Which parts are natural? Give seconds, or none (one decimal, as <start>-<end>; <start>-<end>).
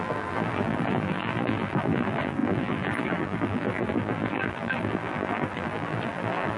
none